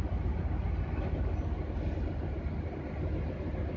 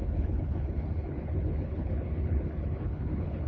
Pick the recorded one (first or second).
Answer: first